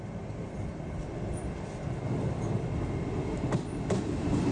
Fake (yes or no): no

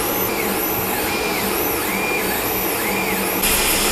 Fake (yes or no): no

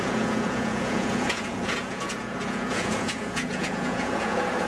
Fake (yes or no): yes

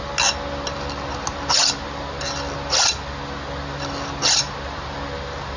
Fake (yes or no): no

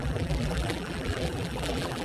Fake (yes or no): yes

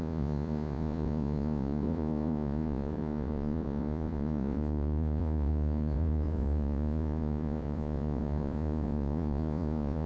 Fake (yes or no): yes